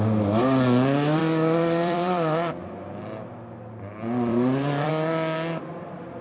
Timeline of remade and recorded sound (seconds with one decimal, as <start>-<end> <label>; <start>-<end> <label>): 0.0-1.2 recorded; 1.2-4.9 remade; 4.9-6.2 recorded